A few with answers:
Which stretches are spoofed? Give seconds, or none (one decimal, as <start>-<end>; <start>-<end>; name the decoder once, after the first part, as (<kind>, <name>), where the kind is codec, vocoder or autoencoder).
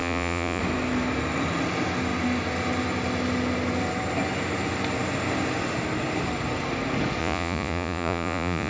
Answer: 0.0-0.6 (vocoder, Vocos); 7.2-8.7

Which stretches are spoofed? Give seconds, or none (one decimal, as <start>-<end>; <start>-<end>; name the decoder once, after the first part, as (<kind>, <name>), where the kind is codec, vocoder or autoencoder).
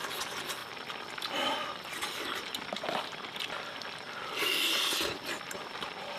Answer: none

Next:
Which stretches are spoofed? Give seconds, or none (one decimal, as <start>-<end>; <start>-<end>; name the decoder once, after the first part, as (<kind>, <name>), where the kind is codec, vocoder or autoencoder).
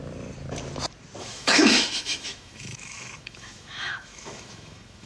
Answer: 1.2-5.1 (autoencoder, DAC-VAE)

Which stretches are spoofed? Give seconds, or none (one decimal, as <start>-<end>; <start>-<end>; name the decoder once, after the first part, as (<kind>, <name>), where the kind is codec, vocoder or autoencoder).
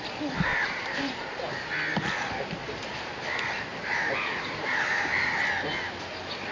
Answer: 0.5-1.4 (vocoder, BigVGAN v2); 2.6-3.2; 3.7-5.3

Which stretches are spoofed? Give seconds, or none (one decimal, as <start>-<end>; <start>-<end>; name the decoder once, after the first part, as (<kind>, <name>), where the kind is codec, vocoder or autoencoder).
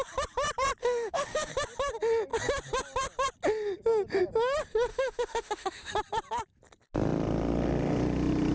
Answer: 0.8-1.5 (autoencoder, DAC-VAE); 4.9-5.9